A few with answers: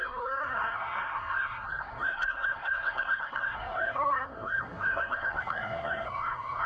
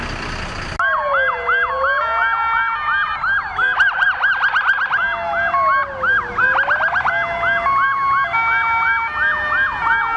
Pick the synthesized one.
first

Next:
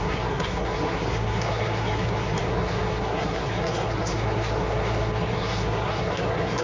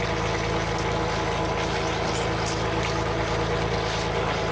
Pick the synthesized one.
first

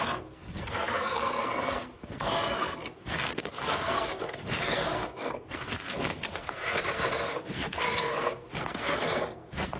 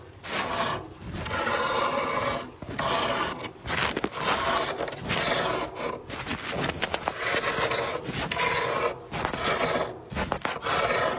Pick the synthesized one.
first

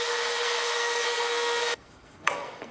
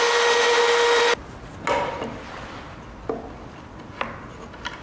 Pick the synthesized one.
first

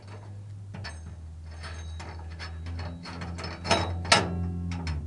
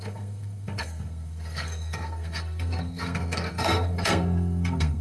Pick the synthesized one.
second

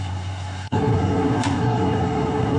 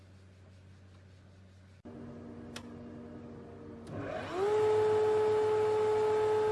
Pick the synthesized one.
first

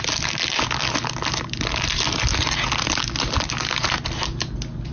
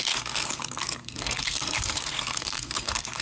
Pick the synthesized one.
second